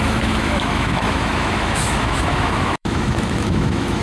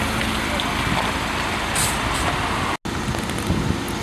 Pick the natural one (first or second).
second